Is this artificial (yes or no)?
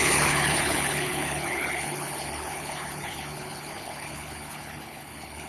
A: yes